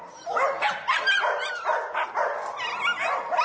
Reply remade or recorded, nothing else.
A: recorded